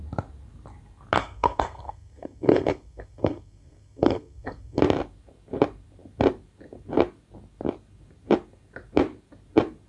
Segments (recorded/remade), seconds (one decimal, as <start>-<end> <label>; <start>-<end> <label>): 0.0-1.2 recorded; 1.2-4.8 remade; 4.8-9.9 recorded

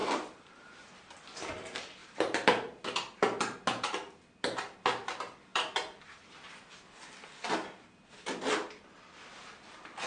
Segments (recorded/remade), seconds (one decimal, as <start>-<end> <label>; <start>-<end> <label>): 0.0-1.1 remade; 1.1-2.0 recorded; 2.0-2.8 remade; 2.8-5.5 recorded; 5.5-6.2 remade; 6.2-10.1 recorded